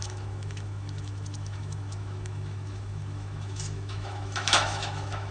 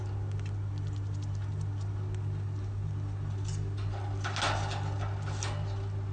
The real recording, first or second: second